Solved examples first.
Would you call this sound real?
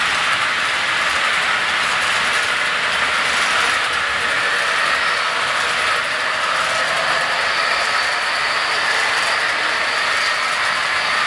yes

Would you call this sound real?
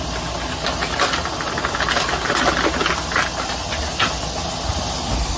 yes